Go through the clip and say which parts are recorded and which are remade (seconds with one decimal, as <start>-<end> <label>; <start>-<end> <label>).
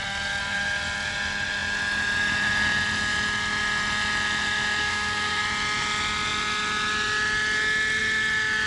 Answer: 0.0-4.8 recorded; 4.8-5.4 remade; 5.4-8.7 recorded